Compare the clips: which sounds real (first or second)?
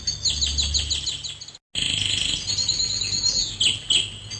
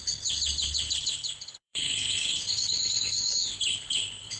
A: first